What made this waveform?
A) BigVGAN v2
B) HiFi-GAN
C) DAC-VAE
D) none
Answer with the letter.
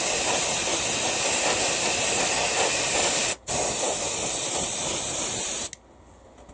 D